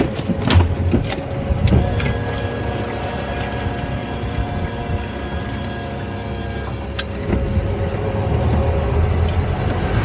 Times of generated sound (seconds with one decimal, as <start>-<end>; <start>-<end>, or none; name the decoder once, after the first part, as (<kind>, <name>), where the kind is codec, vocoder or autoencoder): 4.0-4.8 (vocoder, BigVGAN v2)

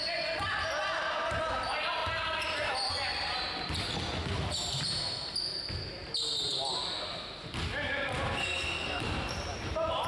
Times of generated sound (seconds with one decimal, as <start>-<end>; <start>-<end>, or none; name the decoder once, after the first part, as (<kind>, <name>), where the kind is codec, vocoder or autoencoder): 8.4-9.0 (codec, SNAC)

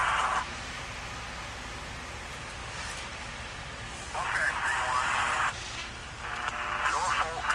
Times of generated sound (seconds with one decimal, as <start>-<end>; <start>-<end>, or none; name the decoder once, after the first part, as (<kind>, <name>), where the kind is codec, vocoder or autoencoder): 2.6-6.0 (vocoder, BigVGAN v2)

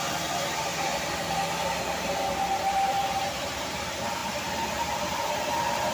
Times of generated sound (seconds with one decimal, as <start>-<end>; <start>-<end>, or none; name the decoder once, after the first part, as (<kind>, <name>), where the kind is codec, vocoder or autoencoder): 0.0-0.7 (vocoder, BigVGAN v2); 2.7-5.9

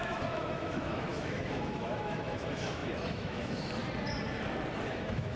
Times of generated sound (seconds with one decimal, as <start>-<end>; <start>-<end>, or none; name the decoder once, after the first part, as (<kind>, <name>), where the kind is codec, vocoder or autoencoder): 0.0-3.8 (autoencoder, DAC-VAE); 4.9-5.4

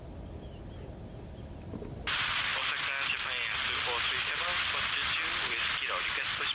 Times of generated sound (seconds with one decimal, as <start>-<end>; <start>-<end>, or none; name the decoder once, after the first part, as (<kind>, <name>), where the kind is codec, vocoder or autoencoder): none

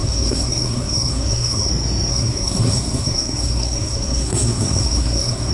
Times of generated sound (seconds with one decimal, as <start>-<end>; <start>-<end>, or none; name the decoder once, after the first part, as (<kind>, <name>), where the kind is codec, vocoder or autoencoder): 0.0-1.7 (codec, SNAC); 2.1-5.5